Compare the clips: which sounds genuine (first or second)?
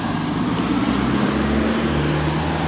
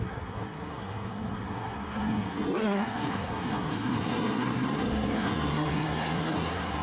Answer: first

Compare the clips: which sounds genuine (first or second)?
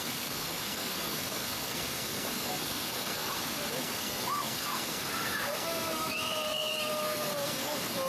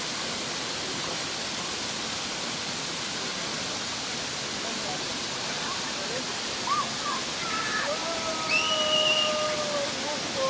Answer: second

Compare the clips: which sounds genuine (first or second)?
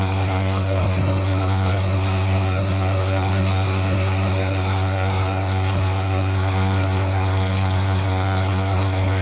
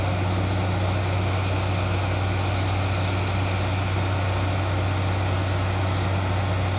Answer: second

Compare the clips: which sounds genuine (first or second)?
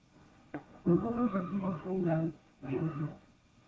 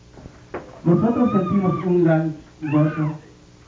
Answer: second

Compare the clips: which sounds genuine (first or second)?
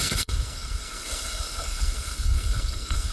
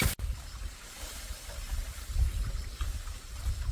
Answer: second